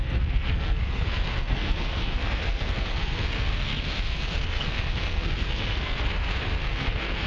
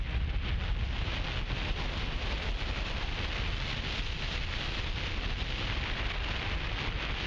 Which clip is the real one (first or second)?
second